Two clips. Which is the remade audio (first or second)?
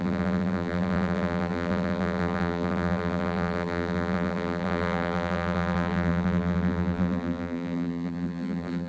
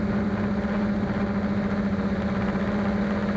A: first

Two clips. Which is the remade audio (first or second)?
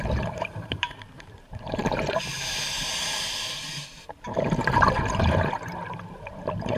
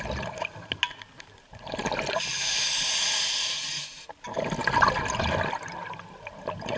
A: first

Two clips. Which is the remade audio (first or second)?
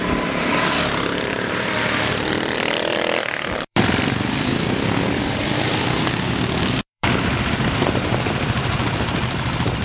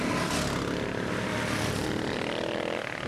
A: first